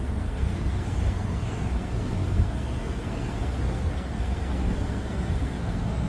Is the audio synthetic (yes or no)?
yes